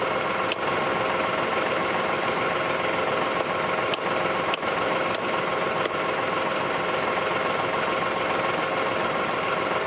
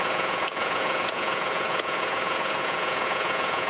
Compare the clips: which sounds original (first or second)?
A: first